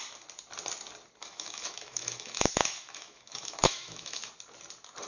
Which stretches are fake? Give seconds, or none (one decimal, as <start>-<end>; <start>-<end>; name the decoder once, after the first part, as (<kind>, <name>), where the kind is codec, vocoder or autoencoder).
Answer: 1.2-4.3 (autoencoder, DAC-VAE)